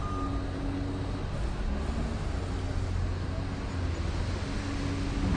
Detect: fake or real real